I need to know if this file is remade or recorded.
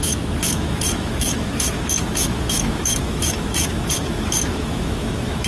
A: remade